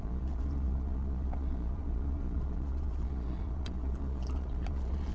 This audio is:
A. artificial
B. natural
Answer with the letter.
A